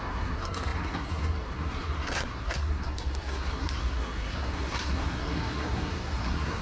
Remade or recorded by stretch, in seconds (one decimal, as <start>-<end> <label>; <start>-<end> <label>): 0.0-6.6 remade